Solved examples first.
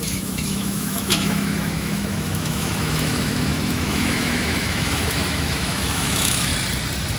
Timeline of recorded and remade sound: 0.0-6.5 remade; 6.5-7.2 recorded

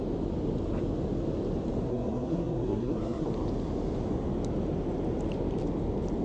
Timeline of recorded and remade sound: 0.0-1.9 recorded; 1.9-3.3 remade; 3.3-6.2 recorded

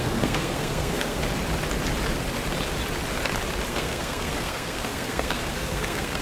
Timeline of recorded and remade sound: 0.0-1.2 remade; 1.2-3.7 recorded; 3.7-6.2 remade

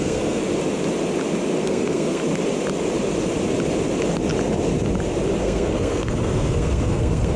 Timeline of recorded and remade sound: 0.0-0.4 remade; 0.4-1.6 recorded; 1.6-2.2 remade; 2.2-5.4 recorded; 5.4-7.4 remade

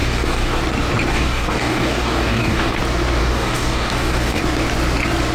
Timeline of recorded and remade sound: 0.0-0.6 remade; 0.6-1.1 recorded; 1.1-2.8 remade; 2.8-3.2 recorded; 3.2-4.4 remade; 4.4-5.3 recorded

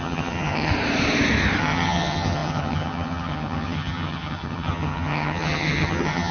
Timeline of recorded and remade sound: 0.0-0.7 remade; 0.7-1.6 recorded; 1.6-6.3 remade

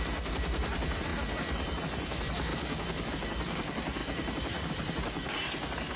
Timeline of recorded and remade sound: 0.0-1.1 remade; 1.1-1.8 recorded; 1.8-2.5 remade; 2.5-3.1 recorded; 3.1-5.2 remade; 5.2-6.0 recorded